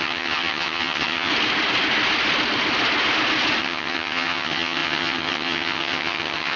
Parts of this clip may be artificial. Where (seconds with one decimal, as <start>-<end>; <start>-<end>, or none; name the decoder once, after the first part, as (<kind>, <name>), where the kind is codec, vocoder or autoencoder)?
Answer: 0.0-1.3 (vocoder, HiFi-GAN); 3.6-6.6